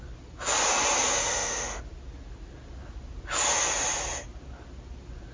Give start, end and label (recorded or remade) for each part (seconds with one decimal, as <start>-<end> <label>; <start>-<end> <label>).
0.0-1.2 recorded; 1.2-1.8 remade; 1.8-5.3 recorded